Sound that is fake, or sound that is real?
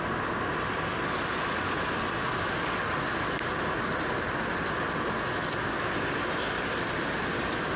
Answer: real